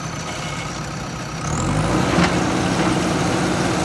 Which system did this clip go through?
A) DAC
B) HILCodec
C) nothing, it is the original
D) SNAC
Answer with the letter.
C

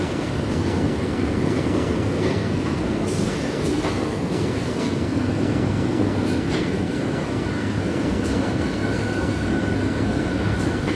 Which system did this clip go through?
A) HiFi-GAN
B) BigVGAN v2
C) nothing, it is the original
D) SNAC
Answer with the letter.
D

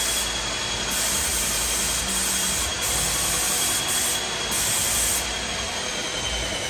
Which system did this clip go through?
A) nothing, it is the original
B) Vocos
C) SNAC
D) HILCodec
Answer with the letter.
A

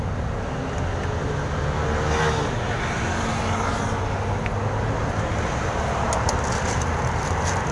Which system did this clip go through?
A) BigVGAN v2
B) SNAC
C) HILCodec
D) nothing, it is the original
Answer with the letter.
D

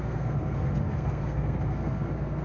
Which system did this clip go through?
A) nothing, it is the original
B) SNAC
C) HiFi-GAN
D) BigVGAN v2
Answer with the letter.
B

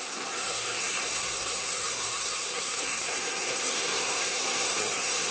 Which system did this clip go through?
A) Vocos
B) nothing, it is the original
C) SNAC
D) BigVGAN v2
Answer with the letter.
C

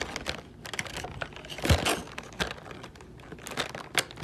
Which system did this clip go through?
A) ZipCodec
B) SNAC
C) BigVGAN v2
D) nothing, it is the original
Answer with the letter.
D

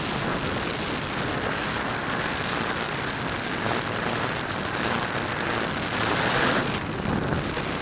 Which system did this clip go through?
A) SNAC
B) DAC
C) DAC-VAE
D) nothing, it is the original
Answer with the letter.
D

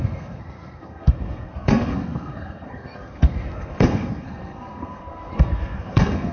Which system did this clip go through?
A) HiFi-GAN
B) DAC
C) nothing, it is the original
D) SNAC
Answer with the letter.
D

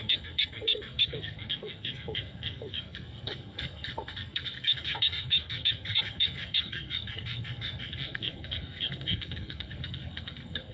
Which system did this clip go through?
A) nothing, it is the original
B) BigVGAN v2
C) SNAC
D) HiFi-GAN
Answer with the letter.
C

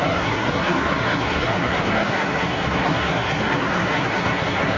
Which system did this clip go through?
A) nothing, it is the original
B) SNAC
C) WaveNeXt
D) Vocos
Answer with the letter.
B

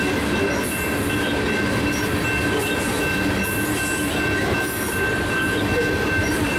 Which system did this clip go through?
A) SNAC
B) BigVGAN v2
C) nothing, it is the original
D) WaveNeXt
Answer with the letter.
C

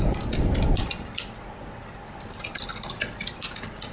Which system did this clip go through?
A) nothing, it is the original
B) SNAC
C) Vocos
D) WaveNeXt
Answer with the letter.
A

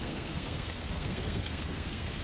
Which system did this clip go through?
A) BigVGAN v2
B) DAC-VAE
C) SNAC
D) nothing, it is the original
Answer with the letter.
C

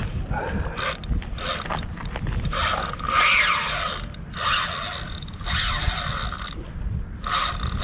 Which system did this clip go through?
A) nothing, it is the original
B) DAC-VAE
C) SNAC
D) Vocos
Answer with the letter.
A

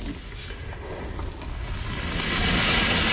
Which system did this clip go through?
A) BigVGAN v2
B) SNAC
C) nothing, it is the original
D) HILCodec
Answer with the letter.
C